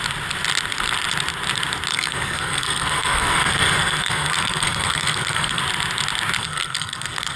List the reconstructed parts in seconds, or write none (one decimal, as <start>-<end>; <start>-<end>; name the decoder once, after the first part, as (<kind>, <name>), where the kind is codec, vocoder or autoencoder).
1.9-5.6 (codec, SNAC); 6.4-7.4

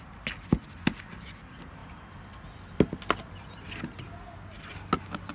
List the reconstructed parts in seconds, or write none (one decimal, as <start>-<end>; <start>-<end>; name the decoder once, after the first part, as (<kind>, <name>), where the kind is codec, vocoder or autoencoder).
none